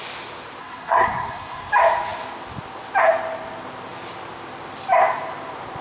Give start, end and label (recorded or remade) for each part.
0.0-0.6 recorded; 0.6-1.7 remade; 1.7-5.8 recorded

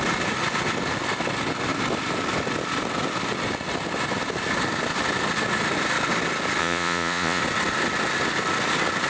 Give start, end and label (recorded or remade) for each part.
0.0-6.6 recorded; 6.6-7.4 remade; 7.4-9.1 recorded

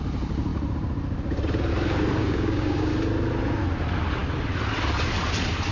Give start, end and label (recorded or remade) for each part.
0.0-2.2 recorded; 2.2-2.9 remade; 2.9-5.7 recorded

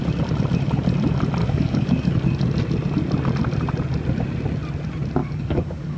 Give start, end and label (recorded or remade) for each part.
0.0-1.4 recorded; 1.4-2.1 remade; 2.1-5.2 recorded; 5.2-6.0 remade

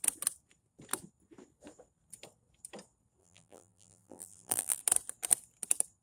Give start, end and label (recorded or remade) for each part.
0.0-3.2 recorded; 3.2-4.8 remade; 4.8-6.0 recorded

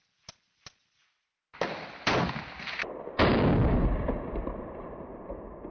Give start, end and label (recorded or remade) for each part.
0.0-5.7 recorded

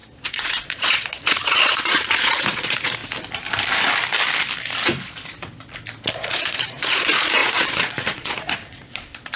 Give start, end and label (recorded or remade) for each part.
0.0-3.0 remade; 3.0-6.1 recorded; 6.1-9.4 remade

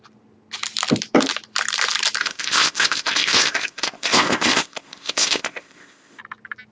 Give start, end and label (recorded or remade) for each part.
0.0-2.2 recorded; 2.2-6.2 remade; 6.2-6.7 recorded